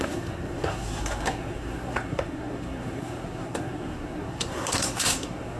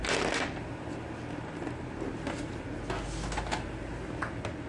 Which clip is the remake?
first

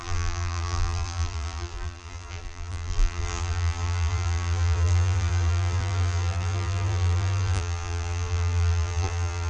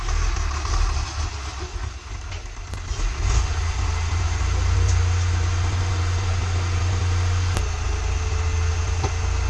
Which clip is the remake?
first